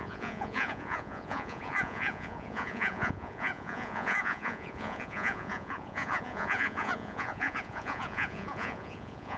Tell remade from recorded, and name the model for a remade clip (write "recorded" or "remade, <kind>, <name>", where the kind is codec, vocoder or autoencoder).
remade, vocoder, Vocos